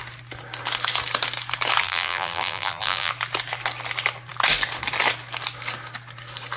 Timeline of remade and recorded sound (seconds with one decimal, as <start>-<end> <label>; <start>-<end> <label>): 0.0-1.8 recorded; 1.8-3.1 remade; 3.1-6.6 recorded